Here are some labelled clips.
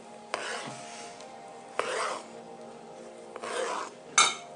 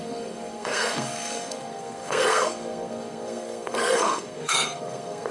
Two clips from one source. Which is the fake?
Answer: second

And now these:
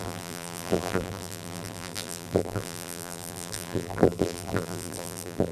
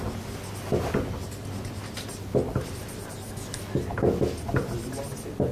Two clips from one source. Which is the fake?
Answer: first